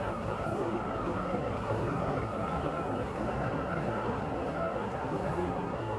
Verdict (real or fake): fake